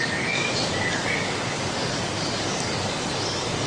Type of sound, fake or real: fake